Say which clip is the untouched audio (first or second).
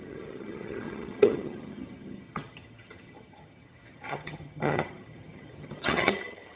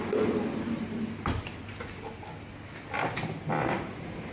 second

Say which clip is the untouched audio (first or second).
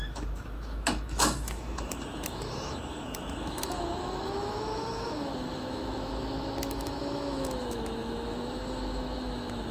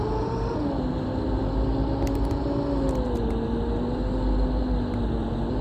second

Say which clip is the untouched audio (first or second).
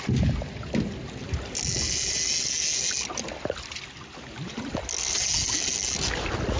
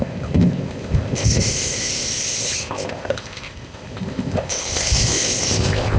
first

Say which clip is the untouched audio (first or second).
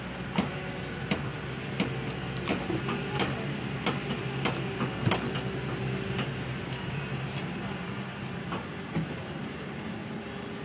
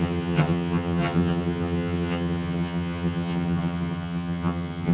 first